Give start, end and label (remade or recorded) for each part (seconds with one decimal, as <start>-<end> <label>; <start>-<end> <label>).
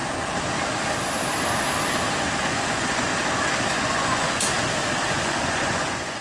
0.0-2.4 recorded; 2.4-3.1 remade; 3.1-3.7 recorded; 3.7-4.5 remade; 4.5-5.1 recorded; 5.1-6.2 remade